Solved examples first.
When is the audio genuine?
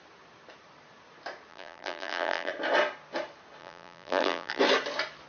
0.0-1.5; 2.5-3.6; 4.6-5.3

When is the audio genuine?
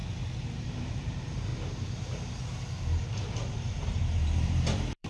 0.0-0.6; 1.5-3.4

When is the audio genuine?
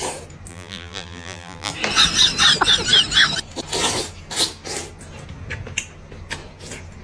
0.0-0.5; 1.7-7.0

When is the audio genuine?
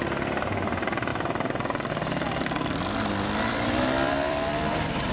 1.1-1.9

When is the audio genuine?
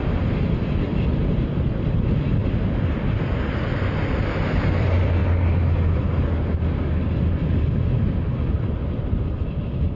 5.2-7.2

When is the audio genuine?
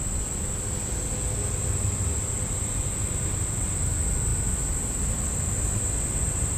0.0-1.4; 3.8-6.6